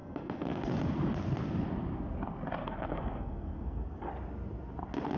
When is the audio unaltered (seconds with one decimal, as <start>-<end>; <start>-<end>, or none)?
0.7-2.6; 4.1-5.2